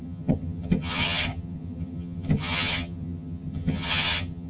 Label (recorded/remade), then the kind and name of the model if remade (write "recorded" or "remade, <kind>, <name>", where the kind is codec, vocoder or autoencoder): remade, vocoder, HiFi-GAN